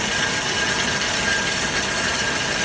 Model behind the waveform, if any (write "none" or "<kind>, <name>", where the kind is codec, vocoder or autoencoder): none